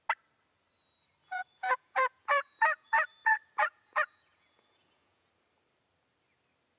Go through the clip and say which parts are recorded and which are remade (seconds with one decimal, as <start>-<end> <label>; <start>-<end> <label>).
0.0-1.2 recorded; 1.2-5.3 remade; 5.3-6.8 recorded